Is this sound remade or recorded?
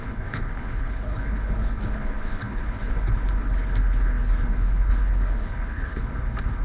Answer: remade